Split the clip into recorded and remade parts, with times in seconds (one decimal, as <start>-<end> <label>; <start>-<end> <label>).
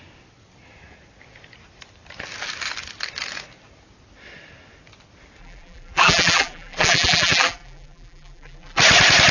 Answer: 0.0-5.4 recorded; 5.4-8.8 remade; 8.8-9.3 recorded